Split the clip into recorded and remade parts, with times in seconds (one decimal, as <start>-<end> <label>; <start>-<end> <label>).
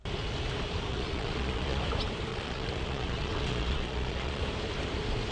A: 0.0-0.9 recorded; 0.9-1.8 remade; 1.8-2.3 recorded; 2.3-4.4 remade; 4.4-5.3 recorded